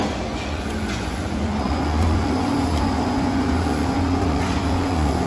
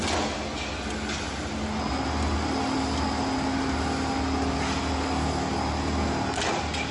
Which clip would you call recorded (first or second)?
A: second